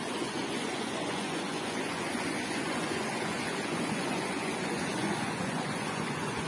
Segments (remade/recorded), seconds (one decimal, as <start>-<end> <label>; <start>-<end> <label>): 0.0-6.5 remade